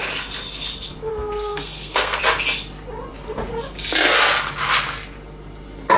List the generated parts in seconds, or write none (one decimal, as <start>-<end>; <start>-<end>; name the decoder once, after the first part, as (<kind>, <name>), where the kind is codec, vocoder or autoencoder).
1.1-2.2 (codec, SNAC)